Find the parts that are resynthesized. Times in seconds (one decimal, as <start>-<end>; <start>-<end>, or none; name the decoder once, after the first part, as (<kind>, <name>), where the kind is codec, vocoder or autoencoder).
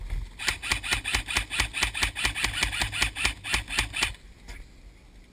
none